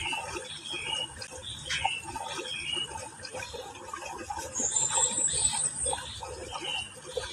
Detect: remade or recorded recorded